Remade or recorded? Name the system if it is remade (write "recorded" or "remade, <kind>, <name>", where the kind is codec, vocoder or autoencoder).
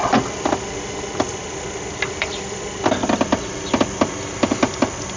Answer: recorded